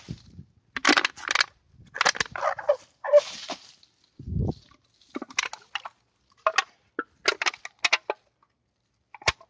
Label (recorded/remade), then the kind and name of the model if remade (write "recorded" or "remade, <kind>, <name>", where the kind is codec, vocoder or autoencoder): recorded